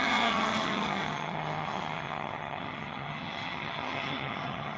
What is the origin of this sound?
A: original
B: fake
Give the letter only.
B